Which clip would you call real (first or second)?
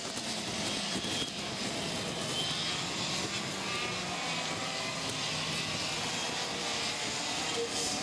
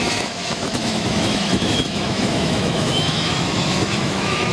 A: first